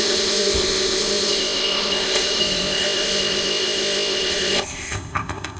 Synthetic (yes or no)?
yes